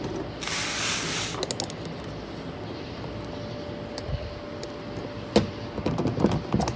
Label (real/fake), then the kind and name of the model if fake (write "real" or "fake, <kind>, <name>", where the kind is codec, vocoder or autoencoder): real